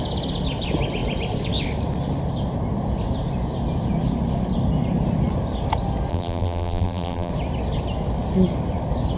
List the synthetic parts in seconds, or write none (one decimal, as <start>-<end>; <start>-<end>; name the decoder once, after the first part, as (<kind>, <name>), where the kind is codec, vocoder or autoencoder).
6.1-7.3 (vocoder, BigVGAN v2)